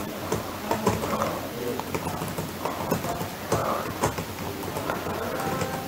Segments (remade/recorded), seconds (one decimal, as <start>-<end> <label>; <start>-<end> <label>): 0.0-5.9 recorded